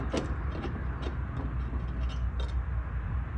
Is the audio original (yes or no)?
yes